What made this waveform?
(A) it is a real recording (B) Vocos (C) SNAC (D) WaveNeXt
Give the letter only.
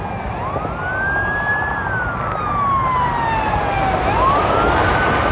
A